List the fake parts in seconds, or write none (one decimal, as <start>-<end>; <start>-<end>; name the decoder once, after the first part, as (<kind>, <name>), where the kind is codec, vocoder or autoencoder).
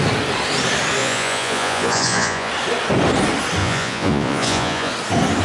1.0-2.5 (vocoder, Vocos); 3.6-4.9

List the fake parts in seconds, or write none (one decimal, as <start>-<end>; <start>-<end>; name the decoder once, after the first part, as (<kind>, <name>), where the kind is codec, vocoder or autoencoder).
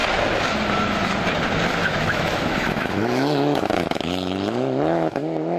1.8-5.6 (autoencoder, DAC-VAE)